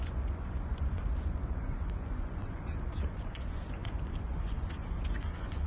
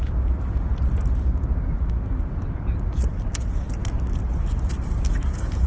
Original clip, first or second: second